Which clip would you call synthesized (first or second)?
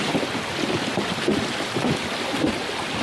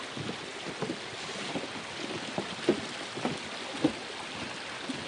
first